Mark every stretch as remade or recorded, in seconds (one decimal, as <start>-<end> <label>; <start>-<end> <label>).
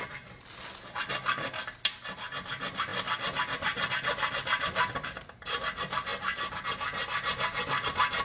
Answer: 0.0-8.2 recorded